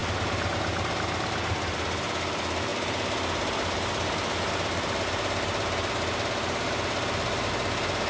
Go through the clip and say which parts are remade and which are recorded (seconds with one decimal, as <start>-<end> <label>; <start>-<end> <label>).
0.0-8.1 recorded